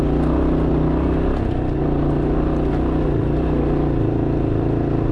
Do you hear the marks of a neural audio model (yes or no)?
no